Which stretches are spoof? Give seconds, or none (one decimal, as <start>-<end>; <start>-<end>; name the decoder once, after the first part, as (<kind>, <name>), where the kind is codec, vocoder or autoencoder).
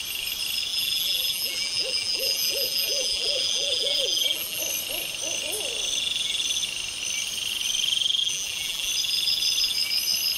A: 0.7-4.6 (vocoder, BigVGAN v2); 8.2-8.9